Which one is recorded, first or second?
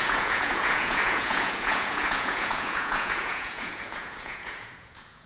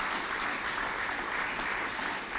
second